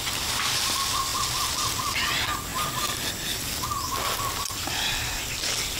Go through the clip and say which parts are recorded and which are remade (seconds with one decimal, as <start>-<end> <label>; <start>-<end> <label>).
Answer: 0.0-5.8 recorded